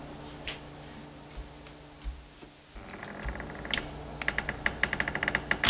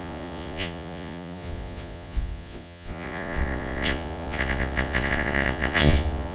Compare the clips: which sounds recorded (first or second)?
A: first